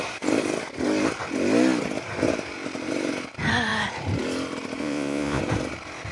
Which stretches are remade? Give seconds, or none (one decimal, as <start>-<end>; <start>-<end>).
4.8-5.4